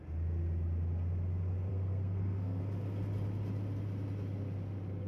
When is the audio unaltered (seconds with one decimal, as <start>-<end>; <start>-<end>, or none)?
0.0-1.7; 2.6-5.1